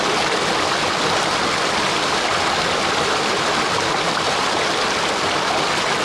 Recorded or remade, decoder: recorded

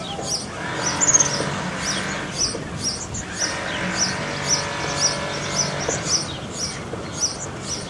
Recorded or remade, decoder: recorded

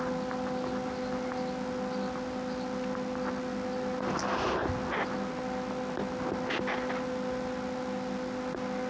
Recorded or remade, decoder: recorded